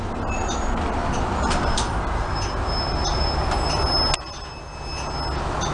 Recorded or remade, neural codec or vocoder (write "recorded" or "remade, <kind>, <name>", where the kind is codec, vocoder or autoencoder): recorded